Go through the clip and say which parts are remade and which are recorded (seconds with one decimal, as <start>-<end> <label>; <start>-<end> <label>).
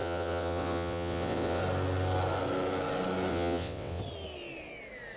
0.0-1.6 remade; 1.6-3.3 recorded; 3.3-4.0 remade; 4.0-5.2 recorded